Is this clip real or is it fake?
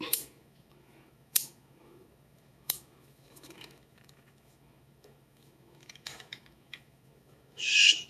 fake